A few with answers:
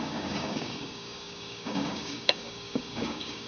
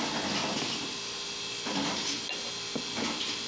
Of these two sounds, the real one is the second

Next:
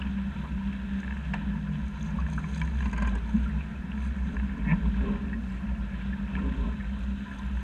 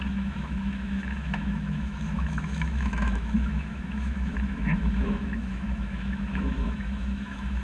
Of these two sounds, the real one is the first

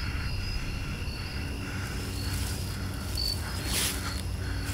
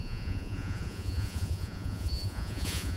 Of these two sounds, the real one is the first